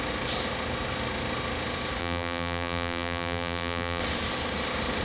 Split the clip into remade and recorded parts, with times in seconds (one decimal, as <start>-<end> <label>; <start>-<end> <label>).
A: 0.0-2.0 recorded; 2.0-4.0 remade; 4.0-5.0 recorded